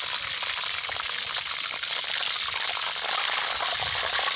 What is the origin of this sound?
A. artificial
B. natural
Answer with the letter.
B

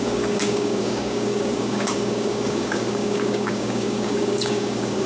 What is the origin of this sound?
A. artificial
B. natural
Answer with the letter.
A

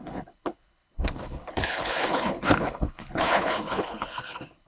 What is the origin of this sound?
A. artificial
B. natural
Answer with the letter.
A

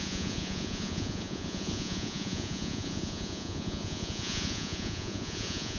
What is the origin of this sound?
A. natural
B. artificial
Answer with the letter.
B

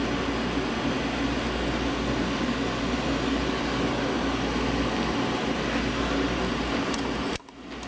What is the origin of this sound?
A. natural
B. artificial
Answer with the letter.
A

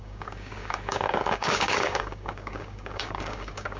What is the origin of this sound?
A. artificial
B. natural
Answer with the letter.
A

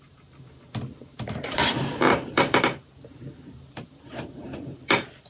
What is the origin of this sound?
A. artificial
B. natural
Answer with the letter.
A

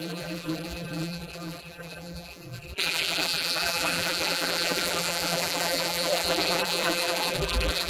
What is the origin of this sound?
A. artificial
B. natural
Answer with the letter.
A